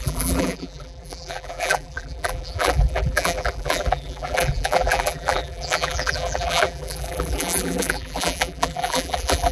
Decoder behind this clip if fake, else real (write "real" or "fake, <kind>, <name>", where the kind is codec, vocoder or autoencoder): fake, vocoder, BigVGAN v2